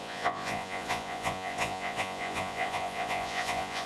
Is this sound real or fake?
fake